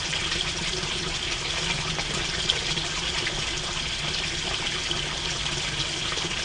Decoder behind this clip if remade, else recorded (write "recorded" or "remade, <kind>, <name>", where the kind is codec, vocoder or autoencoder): recorded